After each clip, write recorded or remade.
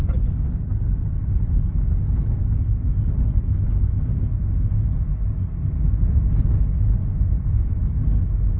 recorded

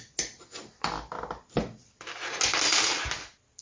recorded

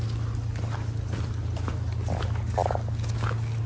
recorded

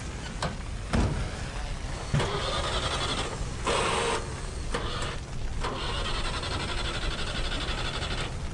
recorded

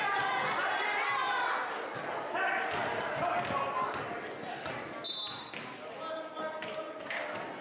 recorded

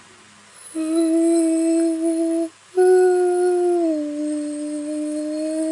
recorded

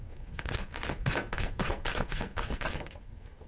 remade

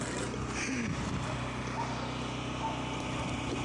recorded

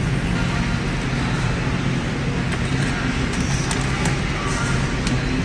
recorded